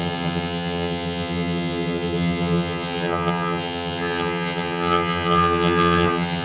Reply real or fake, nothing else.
fake